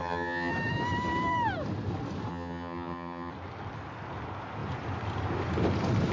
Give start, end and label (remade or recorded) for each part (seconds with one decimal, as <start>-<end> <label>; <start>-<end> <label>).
0.0-0.5 remade; 0.5-2.3 recorded; 2.3-3.3 remade; 3.3-6.1 recorded